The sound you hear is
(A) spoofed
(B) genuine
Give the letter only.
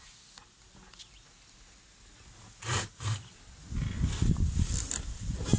B